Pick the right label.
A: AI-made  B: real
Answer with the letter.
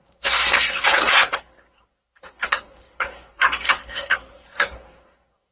A